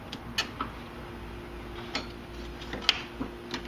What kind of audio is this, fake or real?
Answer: real